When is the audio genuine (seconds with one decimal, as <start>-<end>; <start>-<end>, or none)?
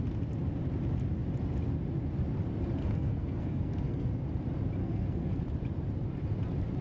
0.0-2.8; 4.1-4.8; 5.4-6.8